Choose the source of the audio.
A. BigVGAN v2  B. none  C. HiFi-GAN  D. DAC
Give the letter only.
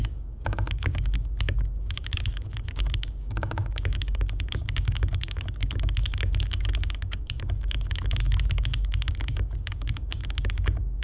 D